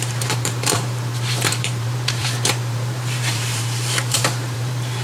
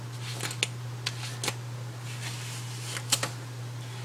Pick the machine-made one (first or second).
first